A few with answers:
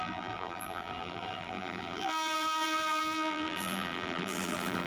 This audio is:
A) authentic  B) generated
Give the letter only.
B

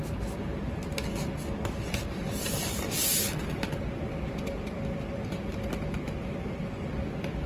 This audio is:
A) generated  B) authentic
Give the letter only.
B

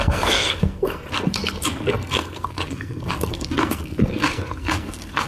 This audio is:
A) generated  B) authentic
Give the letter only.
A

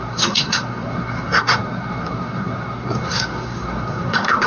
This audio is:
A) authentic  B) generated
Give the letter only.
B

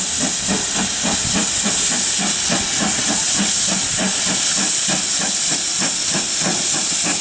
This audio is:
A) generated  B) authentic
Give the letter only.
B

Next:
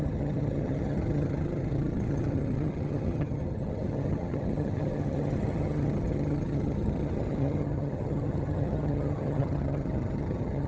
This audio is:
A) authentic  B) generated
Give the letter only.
B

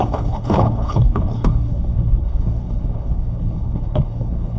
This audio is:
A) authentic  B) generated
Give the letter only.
B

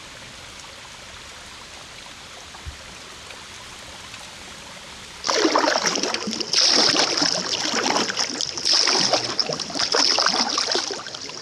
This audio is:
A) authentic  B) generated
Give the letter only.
A